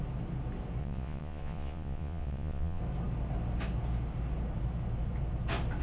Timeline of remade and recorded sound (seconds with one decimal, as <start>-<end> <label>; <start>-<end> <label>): 0.0-0.8 recorded; 0.8-2.8 remade; 2.8-5.8 recorded